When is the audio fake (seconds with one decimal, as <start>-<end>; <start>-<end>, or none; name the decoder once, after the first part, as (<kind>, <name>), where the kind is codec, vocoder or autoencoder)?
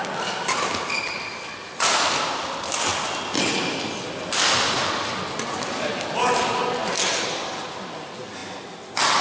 none